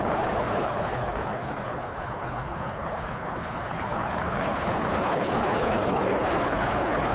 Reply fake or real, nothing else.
fake